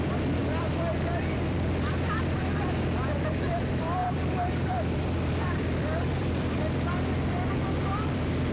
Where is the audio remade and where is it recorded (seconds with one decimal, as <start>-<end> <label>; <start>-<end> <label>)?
0.0-0.4 remade; 0.4-1.1 recorded; 1.1-2.4 remade; 2.4-3.5 recorded; 3.5-8.5 remade